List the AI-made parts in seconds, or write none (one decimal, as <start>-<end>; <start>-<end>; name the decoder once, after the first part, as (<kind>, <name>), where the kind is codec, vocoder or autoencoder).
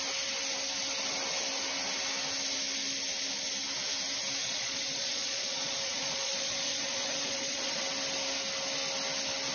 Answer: 4.4-7.8 (vocoder, Vocos)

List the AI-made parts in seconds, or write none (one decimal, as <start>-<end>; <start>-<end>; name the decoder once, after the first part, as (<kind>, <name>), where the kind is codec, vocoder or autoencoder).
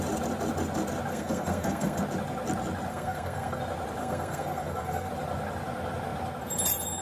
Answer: 1.1-2.0 (codec, SNAC); 2.9-3.6; 4.0-5.1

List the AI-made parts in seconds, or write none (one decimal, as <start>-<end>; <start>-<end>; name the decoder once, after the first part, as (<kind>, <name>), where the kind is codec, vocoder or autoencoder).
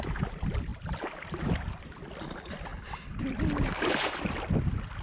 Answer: 0.0-0.7 (vocoder, BigVGAN v2); 1.8-2.7; 3.9-5.0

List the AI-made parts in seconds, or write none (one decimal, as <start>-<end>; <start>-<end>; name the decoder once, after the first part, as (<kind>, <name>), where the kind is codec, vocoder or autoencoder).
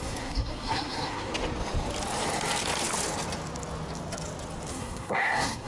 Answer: 0.0-1.3 (codec, SNAC); 4.7-5.7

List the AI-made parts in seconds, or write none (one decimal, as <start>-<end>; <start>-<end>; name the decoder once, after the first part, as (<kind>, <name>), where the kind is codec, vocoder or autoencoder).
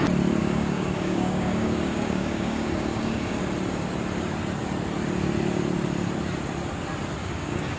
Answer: 0.4-3.4 (codec, DAC); 7.2-7.8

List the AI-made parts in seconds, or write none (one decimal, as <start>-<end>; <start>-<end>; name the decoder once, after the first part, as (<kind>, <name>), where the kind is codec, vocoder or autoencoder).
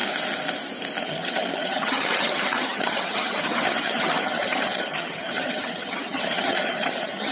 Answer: 1.0-7.3 (vocoder, HiFi-GAN)